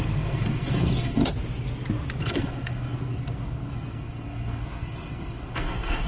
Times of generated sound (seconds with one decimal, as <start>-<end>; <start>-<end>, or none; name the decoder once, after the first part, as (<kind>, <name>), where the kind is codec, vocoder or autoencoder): 0.0-1.2 (codec, SNAC); 2.2-6.1